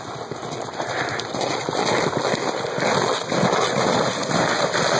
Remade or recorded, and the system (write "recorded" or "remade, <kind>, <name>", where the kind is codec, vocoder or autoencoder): recorded